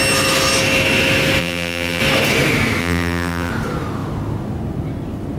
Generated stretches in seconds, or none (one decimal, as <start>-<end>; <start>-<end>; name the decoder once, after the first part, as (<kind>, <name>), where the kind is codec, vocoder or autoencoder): 1.4-2.0 (vocoder, BigVGAN v2); 2.8-3.5